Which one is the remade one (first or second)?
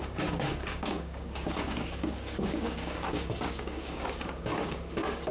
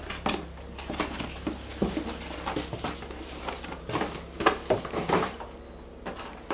first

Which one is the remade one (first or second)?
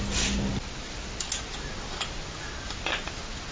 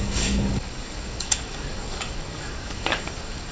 second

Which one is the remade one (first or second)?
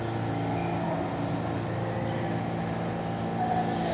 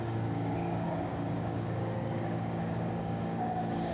second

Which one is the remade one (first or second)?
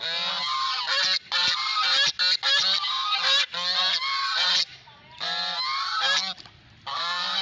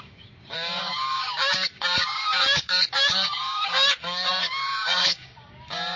second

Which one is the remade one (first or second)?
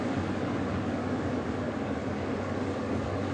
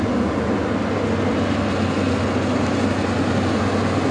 first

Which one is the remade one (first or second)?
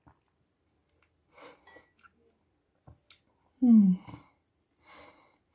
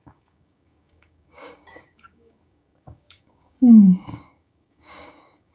second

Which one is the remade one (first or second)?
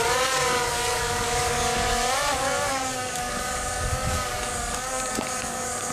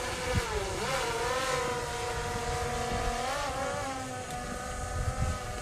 first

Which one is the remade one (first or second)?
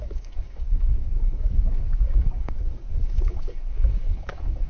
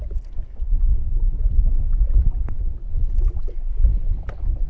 first